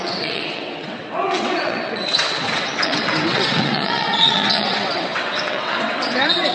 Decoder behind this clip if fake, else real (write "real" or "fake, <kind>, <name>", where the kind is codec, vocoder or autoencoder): fake, vocoder, WaveNeXt